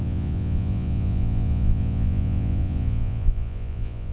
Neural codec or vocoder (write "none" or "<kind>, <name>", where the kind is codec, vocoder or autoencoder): vocoder, Vocos